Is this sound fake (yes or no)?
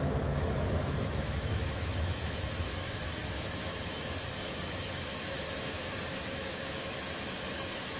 yes